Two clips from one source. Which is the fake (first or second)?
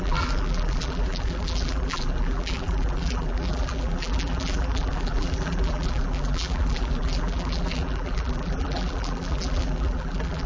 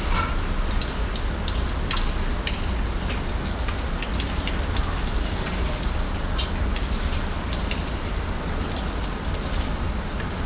first